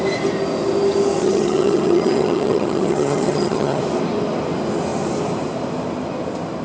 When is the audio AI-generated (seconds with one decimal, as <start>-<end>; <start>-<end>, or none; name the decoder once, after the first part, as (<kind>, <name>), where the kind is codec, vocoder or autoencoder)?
1.2-3.8 (vocoder, HiFi-GAN)